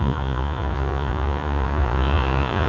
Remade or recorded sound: remade